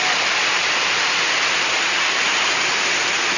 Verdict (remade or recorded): recorded